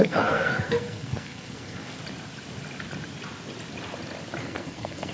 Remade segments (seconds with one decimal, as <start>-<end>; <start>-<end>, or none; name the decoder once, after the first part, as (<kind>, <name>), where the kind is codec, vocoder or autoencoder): 0.0-2.0 (codec, SNAC); 4.4-5.1